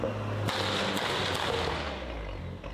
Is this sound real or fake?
real